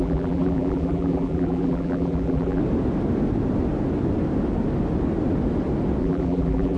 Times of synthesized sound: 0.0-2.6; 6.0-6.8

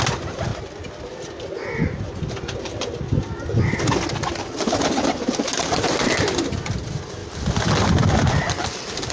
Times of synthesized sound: 0.0-0.5; 5.6-7.2; 8.3-9.1

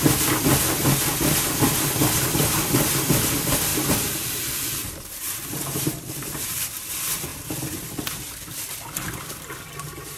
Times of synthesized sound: 3.7-6.7

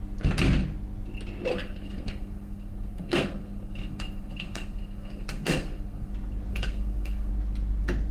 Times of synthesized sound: 1.5-6.1; 6.5-7.3

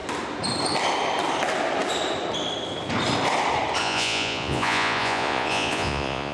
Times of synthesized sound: 3.8-6.3

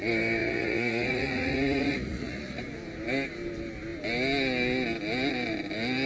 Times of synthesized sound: 0.4-2.6

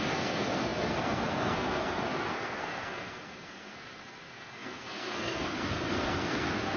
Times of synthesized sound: 0.0-6.8

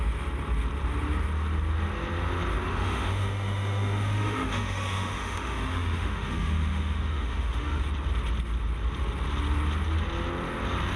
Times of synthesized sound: 2.7-7.8